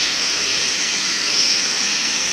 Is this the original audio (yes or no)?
no